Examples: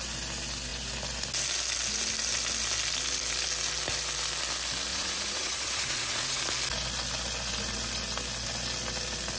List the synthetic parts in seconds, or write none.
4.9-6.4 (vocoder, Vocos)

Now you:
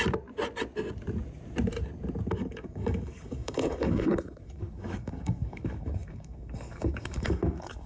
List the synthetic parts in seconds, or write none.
2.3-7.9 (codec, DAC)

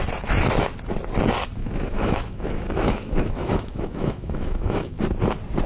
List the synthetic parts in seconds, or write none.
1.6-5.0 (autoencoder, DAC-VAE)

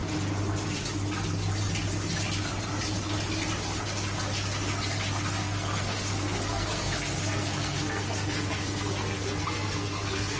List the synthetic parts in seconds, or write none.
5.4-10.4 (codec, SNAC)